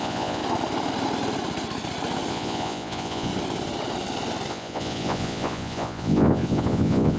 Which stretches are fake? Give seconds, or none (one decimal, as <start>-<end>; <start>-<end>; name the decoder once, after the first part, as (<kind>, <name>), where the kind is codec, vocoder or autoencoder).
0.0-0.4 (vocoder, Vocos); 2.3-3.3; 4.5-7.2